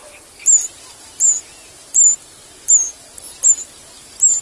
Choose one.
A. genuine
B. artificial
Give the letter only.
A